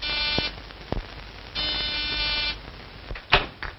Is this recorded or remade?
recorded